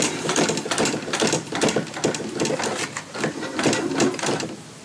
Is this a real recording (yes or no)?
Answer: yes